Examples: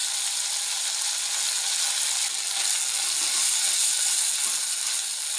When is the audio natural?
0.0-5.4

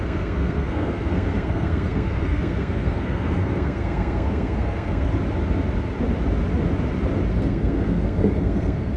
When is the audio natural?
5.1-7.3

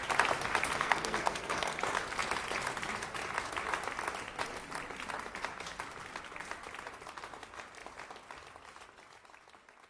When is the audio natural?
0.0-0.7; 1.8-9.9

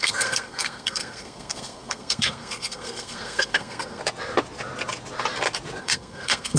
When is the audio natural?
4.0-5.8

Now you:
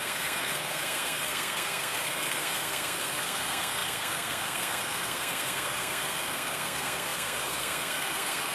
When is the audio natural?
none

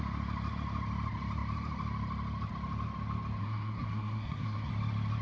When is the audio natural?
0.0-3.4; 4.7-5.2